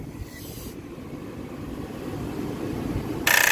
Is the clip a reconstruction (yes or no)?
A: no